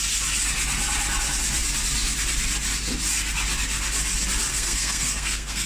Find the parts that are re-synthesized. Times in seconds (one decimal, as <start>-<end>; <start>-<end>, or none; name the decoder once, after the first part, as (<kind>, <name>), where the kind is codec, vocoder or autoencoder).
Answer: 4.5-5.7 (codec, SNAC)